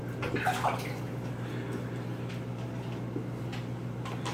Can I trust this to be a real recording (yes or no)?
yes